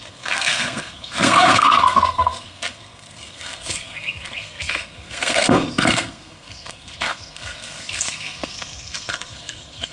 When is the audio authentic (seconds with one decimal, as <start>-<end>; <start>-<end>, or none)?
none